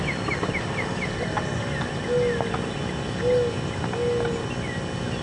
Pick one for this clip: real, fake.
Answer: real